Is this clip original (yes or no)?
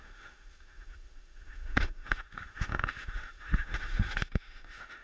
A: no